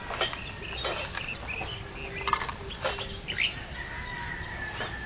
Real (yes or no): yes